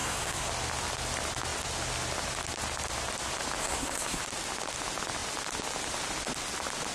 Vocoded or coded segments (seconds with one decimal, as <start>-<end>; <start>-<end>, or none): 0.0-0.5; 3.6-4.2